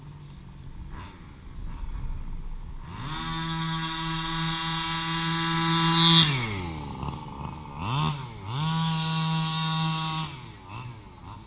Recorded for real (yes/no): yes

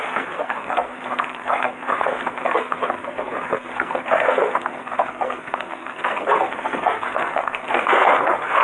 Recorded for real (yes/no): no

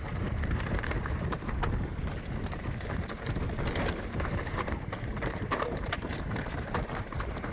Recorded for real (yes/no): no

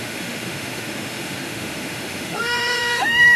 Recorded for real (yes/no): no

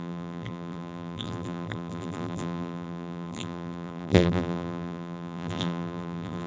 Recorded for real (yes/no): no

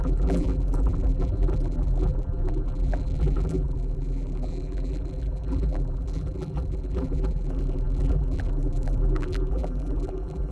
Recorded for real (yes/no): no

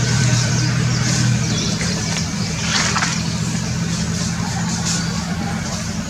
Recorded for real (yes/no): no